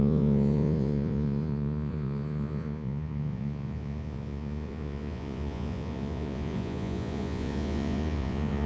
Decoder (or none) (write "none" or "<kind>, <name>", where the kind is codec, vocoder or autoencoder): vocoder, Vocos